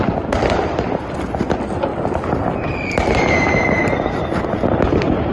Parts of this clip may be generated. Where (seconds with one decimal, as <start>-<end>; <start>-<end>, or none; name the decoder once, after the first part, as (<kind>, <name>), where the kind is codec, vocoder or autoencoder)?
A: none